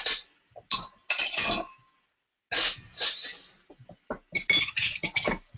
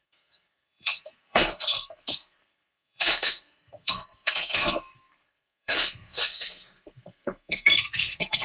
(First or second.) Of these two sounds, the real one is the first